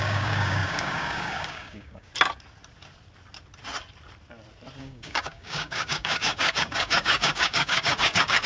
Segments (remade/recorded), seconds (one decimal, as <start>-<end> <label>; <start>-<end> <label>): 0.0-2.1 remade; 2.1-4.8 recorded; 4.8-8.5 remade